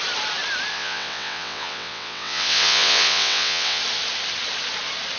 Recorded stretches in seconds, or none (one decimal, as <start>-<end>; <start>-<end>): 0.0-0.7; 3.8-5.2